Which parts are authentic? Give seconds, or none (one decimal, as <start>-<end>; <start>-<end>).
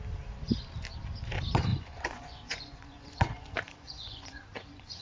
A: 0.0-1.7